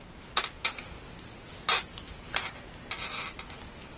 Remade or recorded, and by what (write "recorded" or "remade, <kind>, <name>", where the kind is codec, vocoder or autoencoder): recorded